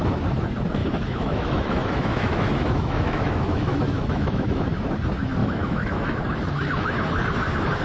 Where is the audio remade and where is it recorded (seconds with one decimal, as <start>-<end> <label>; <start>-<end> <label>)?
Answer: 0.0-0.8 recorded; 0.8-4.6 remade; 4.6-5.4 recorded; 5.4-6.2 remade; 6.2-7.8 recorded